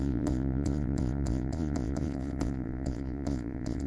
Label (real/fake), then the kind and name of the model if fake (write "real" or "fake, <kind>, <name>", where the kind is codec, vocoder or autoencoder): fake, vocoder, Vocos